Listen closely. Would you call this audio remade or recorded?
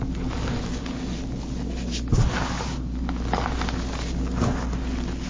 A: recorded